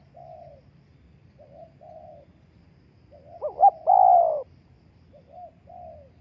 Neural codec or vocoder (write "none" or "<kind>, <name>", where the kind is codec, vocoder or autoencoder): none